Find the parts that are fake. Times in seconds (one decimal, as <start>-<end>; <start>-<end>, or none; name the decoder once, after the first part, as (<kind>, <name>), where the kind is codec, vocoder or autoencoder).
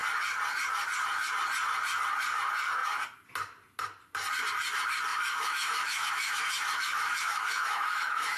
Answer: 5.1-8.4 (autoencoder, DAC-VAE)